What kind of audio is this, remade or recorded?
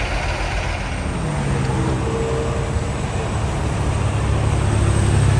recorded